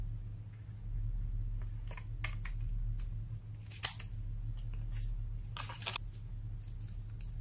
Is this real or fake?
real